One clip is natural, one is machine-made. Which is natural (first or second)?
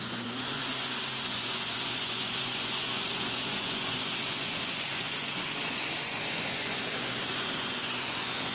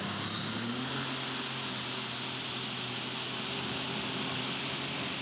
second